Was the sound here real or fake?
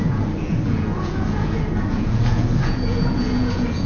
fake